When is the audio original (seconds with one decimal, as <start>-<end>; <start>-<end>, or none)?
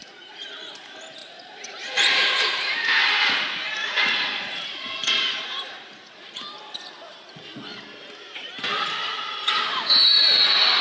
0.7-1.2; 6.4-10.8